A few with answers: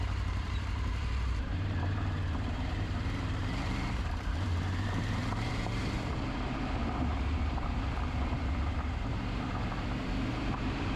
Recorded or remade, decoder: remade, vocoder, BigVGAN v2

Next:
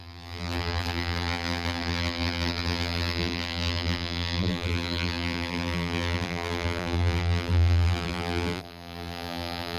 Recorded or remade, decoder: remade, vocoder, BigVGAN v2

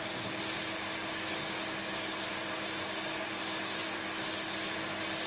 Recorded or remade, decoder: recorded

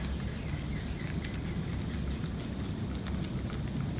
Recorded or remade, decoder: recorded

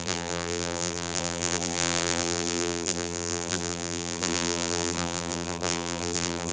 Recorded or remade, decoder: remade, vocoder, BigVGAN v2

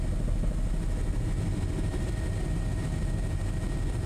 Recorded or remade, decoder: recorded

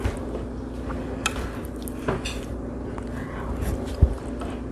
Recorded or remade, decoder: recorded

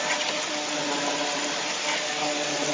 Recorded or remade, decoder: recorded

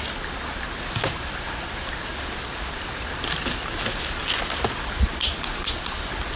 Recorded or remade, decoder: recorded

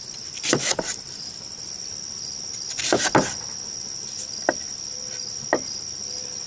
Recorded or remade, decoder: remade, vocoder, BigVGAN v2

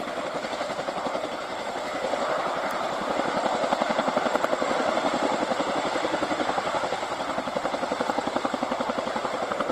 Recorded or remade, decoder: remade, vocoder, BigVGAN v2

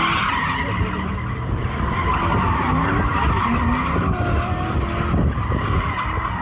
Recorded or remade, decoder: recorded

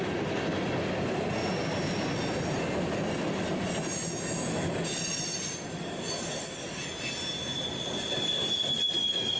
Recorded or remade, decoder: recorded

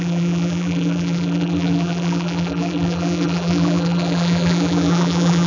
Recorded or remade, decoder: remade, vocoder, BigVGAN v2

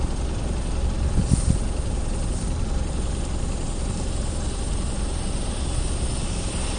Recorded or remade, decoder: remade, vocoder, BigVGAN v2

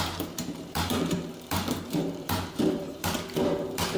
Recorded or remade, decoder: remade, vocoder, BigVGAN v2